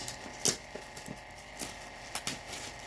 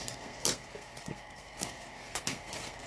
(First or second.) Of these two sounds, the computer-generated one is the second